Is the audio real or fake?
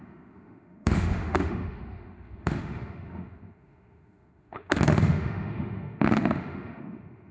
fake